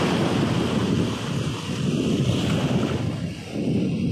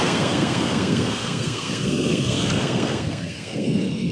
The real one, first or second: first